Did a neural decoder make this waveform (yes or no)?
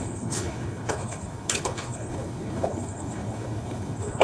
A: yes